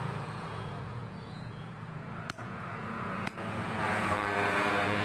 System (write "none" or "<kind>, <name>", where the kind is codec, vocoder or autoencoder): vocoder, Vocos